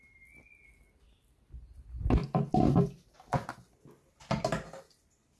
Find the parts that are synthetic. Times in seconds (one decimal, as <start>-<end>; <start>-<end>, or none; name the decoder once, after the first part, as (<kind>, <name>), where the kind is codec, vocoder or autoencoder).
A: none

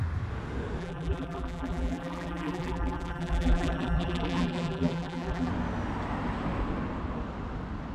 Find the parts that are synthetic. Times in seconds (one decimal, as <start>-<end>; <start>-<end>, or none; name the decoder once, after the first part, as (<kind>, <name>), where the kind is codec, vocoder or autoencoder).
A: 0.8-5.5 (vocoder, BigVGAN v2)

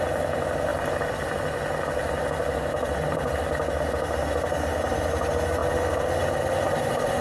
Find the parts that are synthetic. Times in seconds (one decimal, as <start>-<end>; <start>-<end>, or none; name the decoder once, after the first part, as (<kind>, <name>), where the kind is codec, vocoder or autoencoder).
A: none

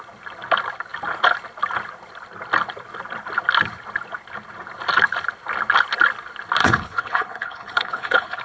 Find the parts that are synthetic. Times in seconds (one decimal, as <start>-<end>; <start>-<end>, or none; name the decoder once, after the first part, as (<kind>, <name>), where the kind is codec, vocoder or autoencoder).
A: 6.6-8.4 (codec, HILCodec)

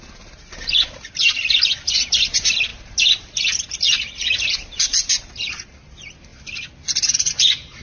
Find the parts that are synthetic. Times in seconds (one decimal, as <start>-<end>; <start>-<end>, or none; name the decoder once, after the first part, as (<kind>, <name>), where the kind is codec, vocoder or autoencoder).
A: none

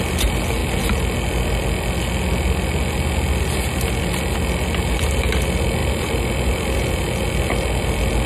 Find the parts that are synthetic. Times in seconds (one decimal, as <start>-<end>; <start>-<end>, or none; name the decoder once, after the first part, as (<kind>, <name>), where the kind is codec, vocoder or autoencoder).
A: 5.8-7.0 (vocoder, BigVGAN v2)